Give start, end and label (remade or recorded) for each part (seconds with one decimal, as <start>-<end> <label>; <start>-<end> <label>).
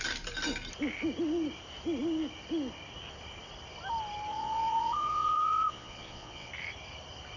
0.0-4.3 recorded; 4.3-6.5 remade; 6.5-7.4 recorded